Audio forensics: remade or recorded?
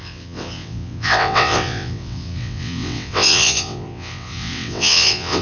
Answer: remade